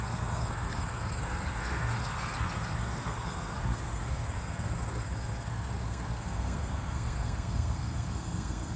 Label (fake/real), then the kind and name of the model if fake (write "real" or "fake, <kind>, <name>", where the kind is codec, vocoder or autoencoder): fake, codec, SNAC